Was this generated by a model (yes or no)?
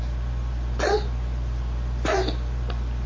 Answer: no